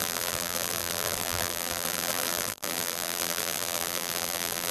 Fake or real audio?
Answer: fake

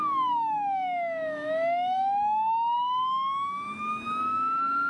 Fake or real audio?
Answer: fake